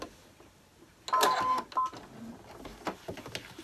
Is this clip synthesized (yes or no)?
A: no